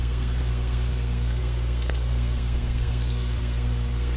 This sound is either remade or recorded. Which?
remade